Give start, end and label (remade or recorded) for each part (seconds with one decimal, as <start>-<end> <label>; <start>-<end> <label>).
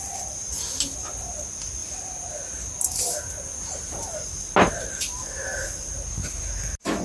0.0-7.0 recorded